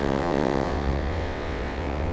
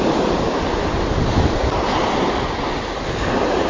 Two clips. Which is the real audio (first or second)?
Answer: second